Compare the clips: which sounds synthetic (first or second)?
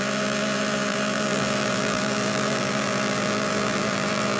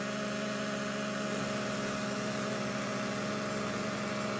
first